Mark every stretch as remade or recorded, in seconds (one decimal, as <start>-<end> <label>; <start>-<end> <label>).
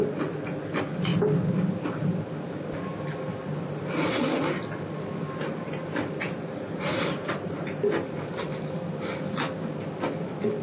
0.0-6.9 recorded; 6.9-8.1 remade; 8.1-10.6 recorded